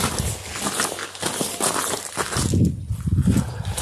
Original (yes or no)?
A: yes